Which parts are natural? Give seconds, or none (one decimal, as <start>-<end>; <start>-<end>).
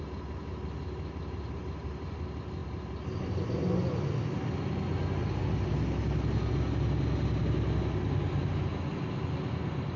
0.0-10.0